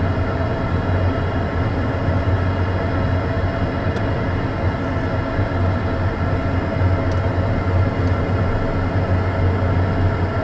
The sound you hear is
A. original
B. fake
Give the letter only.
A